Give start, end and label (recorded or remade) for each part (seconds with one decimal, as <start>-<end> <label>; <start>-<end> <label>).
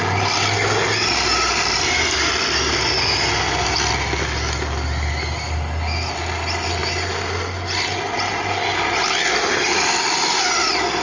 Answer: 0.0-11.0 recorded